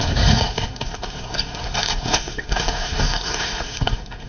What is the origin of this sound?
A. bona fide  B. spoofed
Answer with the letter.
B